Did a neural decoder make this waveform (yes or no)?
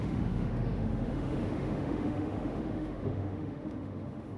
yes